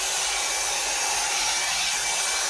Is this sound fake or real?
real